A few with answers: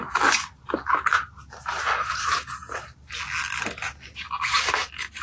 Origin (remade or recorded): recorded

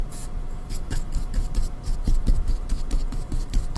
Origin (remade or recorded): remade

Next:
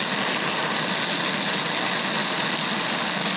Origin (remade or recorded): recorded